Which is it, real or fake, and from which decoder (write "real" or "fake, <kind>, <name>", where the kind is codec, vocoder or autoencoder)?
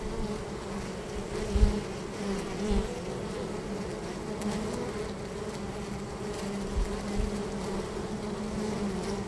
real